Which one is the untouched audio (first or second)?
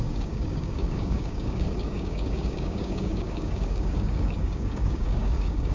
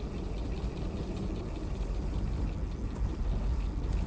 second